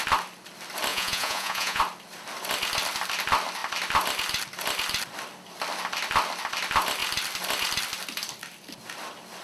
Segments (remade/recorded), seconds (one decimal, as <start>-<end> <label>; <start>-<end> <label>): 0.0-0.9 recorded; 0.9-1.8 remade; 1.8-9.4 recorded